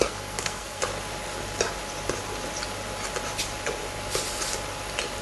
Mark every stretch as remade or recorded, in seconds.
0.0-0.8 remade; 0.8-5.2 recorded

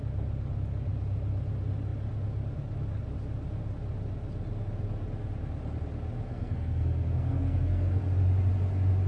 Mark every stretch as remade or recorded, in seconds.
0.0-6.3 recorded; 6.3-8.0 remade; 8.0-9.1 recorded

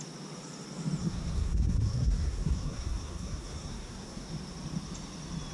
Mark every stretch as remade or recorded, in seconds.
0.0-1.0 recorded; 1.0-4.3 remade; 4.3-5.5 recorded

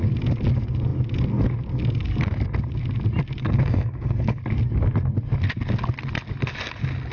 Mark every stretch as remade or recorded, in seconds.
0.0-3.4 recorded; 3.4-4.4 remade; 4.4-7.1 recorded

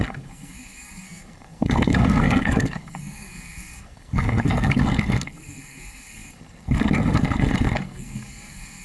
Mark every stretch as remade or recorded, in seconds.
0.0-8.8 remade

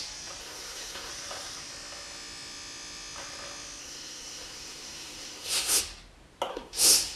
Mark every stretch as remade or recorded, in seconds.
0.0-0.4 recorded; 0.4-1.1 remade; 1.1-3.8 recorded; 3.8-5.8 remade; 5.8-6.5 recorded; 6.5-7.2 remade